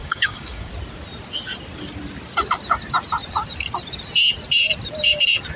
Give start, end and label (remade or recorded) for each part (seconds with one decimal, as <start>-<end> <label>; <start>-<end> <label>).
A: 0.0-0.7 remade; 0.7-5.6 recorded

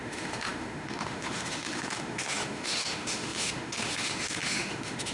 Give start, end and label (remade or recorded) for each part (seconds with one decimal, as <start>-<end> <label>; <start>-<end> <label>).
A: 0.0-5.1 remade

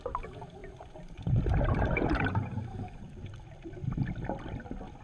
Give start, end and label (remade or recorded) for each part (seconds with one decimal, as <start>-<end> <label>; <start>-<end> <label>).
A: 0.0-0.6 recorded; 0.6-3.6 remade; 3.6-5.0 recorded